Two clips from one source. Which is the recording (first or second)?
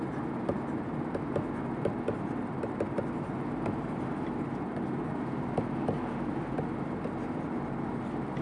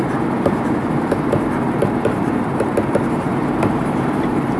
first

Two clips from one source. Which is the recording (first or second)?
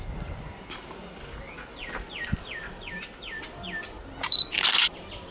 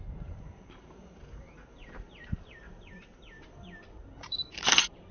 first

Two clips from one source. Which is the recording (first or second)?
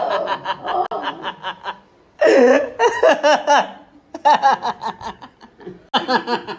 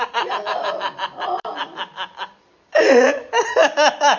first